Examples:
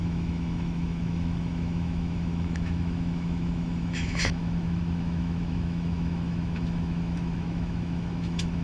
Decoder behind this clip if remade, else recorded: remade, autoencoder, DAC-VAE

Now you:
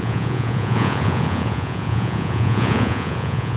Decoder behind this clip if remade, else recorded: remade, vocoder, Vocos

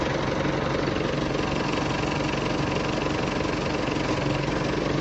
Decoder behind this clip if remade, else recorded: recorded